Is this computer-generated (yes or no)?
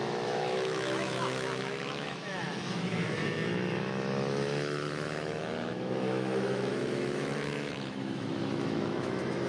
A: yes